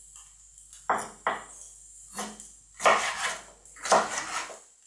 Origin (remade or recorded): recorded